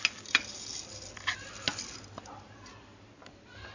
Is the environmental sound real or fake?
real